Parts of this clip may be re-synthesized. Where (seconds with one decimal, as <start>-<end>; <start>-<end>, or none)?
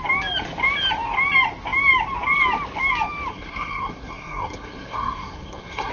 3.3-5.9